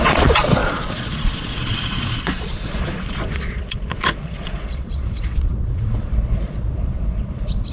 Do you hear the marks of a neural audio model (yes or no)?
yes